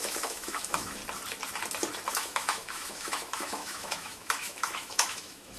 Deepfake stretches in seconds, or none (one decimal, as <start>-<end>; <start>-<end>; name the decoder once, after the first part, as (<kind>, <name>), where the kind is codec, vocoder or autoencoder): 0.0-1.0 (autoencoder, DAC-VAE); 2.1-5.6